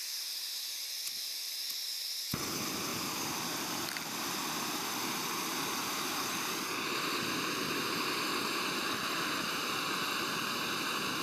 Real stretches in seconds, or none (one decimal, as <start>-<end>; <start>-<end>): 0.0-2.9; 5.0-5.8